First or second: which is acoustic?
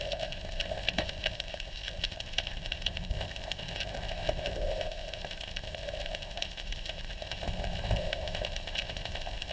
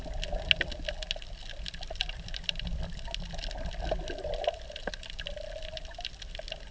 second